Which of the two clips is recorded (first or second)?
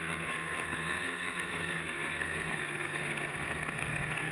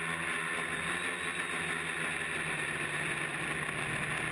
second